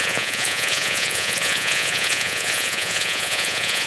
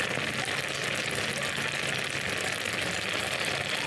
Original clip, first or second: second